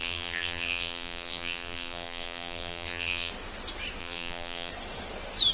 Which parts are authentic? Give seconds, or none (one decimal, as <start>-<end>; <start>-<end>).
3.3-4.0; 4.7-5.5